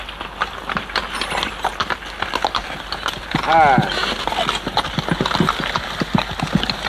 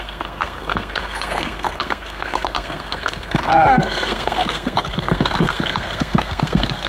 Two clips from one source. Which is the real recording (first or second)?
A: first